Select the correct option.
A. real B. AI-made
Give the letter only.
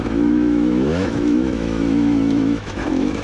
B